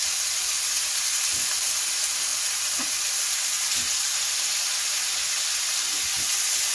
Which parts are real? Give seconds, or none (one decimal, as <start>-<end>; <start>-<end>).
0.0-6.7